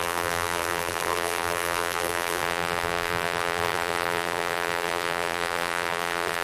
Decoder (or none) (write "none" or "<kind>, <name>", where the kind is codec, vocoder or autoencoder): vocoder, BigVGAN v2